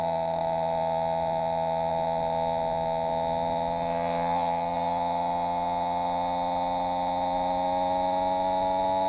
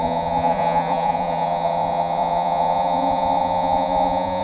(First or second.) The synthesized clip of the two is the second